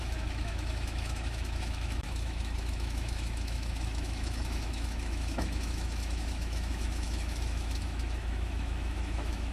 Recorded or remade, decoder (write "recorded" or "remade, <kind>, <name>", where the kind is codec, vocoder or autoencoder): remade, autoencoder, DAC-VAE